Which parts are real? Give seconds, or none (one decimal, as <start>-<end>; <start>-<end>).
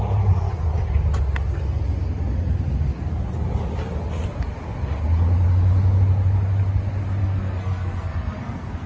0.0-7.2